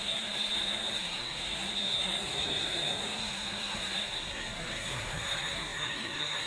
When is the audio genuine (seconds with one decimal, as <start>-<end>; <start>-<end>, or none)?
none